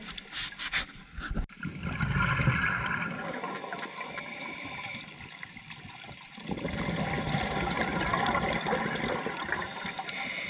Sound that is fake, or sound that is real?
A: real